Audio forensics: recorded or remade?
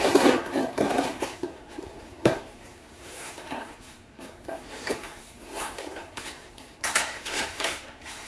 remade